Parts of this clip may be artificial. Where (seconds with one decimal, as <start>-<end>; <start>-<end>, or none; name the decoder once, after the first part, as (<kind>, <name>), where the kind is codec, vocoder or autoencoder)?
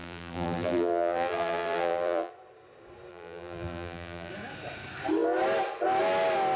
0.0-2.3 (vocoder, BigVGAN v2); 3.1-4.3